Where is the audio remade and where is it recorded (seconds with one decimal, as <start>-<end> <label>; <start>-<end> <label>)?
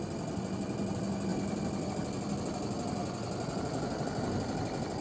0.0-1.3 recorded; 1.3-1.9 remade; 1.9-5.0 recorded